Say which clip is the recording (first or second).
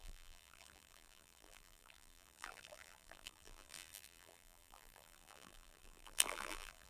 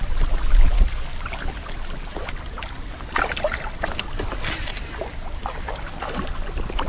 second